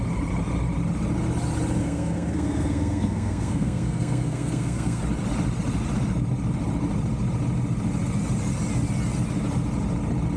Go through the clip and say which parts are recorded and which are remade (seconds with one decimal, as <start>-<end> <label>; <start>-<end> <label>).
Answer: 0.0-1.8 recorded; 1.8-5.0 remade; 5.0-10.4 recorded